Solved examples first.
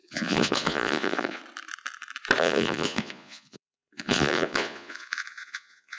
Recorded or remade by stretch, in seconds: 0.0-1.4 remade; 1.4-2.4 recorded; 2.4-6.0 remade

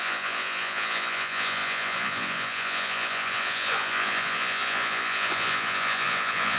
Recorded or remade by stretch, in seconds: 0.0-6.6 remade

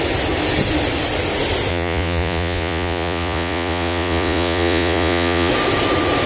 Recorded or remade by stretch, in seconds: 0.0-1.7 recorded; 1.7-5.5 remade; 5.5-6.3 recorded

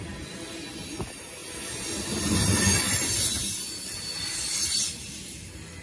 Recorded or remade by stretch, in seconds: 0.0-5.8 recorded

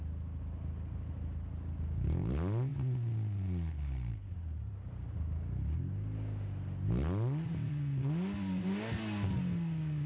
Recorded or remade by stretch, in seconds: 0.0-10.1 recorded

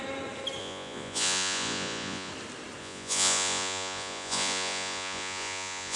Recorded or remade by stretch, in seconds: 0.0-0.6 recorded; 0.6-2.3 remade; 2.3-2.8 recorded; 2.8-6.0 remade

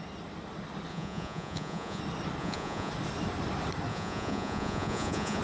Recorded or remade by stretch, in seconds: 0.0-0.9 recorded; 0.9-2.0 remade; 2.0-2.4 recorded; 2.4-2.9 remade; 2.9-3.9 recorded; 3.9-5.4 remade